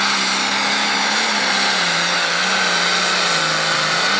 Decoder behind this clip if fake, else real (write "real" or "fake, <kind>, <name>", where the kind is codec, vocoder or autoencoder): real